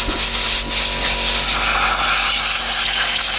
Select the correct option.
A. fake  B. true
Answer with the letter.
B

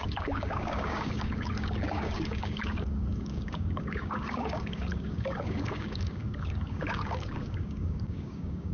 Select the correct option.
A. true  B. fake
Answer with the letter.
B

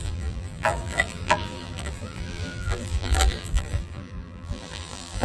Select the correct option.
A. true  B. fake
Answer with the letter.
B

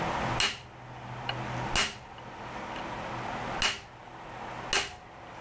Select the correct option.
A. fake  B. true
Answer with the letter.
B